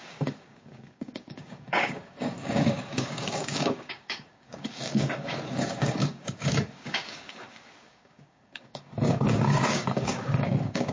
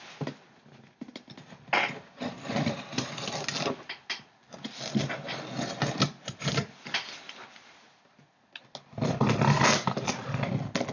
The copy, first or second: first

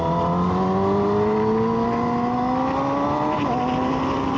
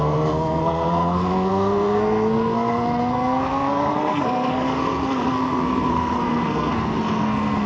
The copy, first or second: second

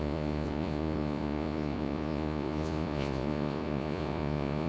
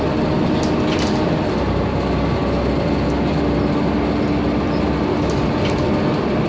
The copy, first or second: first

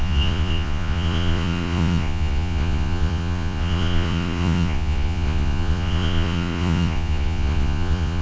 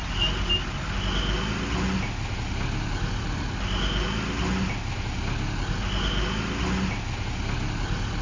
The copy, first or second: first